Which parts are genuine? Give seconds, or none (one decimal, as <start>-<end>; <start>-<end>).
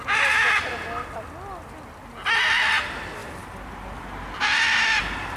0.0-5.4